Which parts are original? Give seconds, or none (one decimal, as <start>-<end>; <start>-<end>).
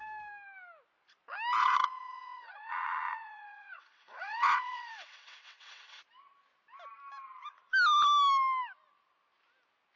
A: 0.0-1.6; 6.0-10.0